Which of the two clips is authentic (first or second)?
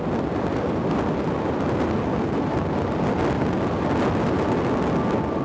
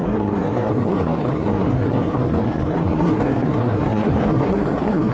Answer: first